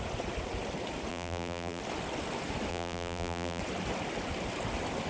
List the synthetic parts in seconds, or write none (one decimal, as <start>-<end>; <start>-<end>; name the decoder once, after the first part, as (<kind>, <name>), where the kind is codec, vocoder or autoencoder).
1.1-1.8 (vocoder, BigVGAN v2); 2.7-3.6